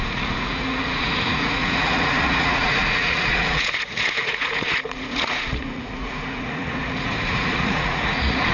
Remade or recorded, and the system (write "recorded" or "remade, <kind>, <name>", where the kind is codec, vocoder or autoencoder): remade, vocoder, Vocos